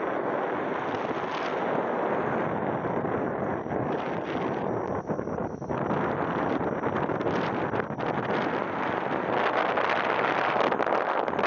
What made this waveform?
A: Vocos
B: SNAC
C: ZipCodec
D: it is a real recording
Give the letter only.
D